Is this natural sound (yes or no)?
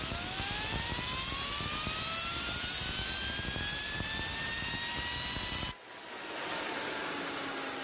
yes